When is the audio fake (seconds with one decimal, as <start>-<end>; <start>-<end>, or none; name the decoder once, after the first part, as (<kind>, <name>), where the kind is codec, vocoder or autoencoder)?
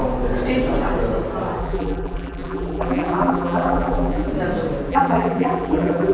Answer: 1.6-4.3 (vocoder, BigVGAN v2); 4.9-6.1